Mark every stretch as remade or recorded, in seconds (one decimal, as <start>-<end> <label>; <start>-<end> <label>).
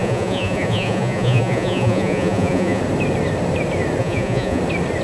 0.0-2.8 remade; 2.8-4.0 recorded; 4.0-4.6 remade; 4.6-5.0 recorded